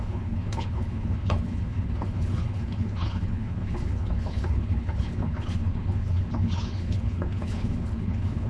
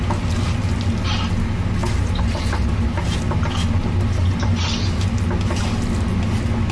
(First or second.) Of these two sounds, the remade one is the first